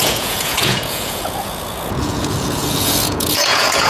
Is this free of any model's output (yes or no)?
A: no